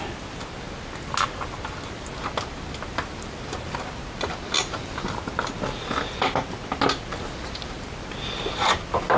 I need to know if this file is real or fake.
real